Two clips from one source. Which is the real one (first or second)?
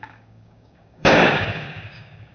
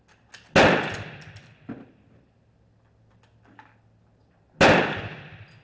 second